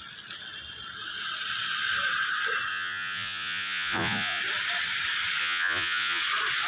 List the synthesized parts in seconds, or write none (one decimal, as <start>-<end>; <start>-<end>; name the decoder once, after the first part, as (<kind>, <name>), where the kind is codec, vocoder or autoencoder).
2.7-4.4 (vocoder, Vocos); 5.4-6.2